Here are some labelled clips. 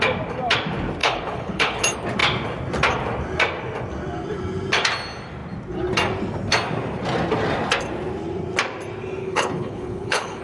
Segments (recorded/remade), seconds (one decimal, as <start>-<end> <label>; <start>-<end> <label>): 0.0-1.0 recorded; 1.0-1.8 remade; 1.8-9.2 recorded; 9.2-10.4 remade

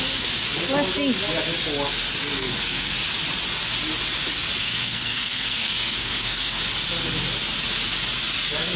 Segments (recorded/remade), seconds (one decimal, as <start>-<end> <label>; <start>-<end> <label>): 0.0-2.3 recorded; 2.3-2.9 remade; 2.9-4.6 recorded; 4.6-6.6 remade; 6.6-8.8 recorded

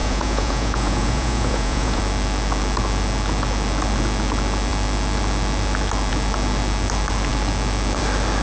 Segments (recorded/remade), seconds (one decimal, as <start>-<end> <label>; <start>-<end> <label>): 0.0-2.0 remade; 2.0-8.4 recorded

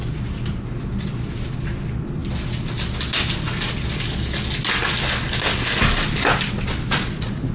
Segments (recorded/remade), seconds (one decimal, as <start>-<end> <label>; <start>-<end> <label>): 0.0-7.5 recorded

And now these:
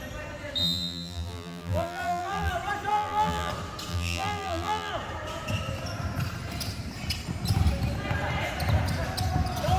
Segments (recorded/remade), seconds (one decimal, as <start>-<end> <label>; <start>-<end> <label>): 0.0-0.6 recorded; 0.6-2.5 remade; 2.5-2.9 recorded; 2.9-3.5 remade; 3.5-3.9 recorded; 3.9-4.9 remade; 4.9-9.8 recorded

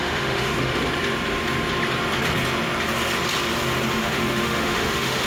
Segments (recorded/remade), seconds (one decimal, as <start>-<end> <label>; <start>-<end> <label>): 0.0-0.8 remade; 0.8-4.0 recorded; 4.0-5.3 remade

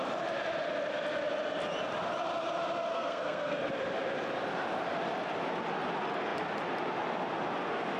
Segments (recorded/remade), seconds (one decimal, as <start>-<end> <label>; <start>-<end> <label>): 0.0-2.9 recorded; 2.9-3.7 remade; 3.7-8.0 recorded

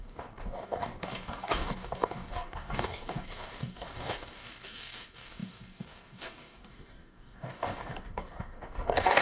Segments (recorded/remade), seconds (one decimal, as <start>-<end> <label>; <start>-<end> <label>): 0.0-9.2 remade